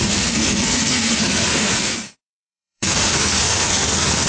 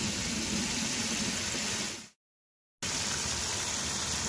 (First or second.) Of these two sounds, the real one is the second